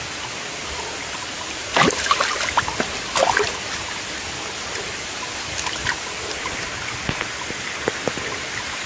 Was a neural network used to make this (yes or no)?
no